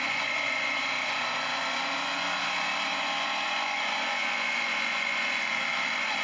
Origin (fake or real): fake